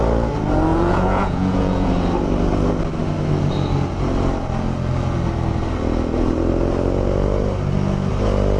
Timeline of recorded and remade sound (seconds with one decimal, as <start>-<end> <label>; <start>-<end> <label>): 0.0-0.7 recorded; 0.7-1.9 remade; 1.9-8.6 recorded